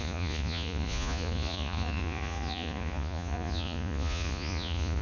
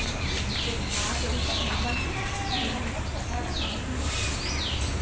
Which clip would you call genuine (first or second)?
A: second